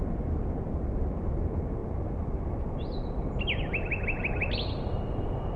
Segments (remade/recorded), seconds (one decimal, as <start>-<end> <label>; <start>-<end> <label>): 0.0-5.6 recorded